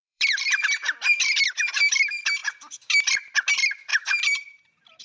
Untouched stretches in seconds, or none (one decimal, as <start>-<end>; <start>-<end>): 2.4-3.5